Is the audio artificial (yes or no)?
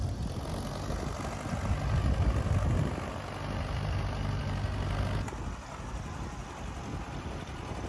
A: no